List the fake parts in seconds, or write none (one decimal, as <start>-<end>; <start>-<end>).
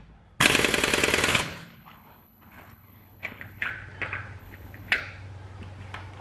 1.3-3.7; 4.4-5.0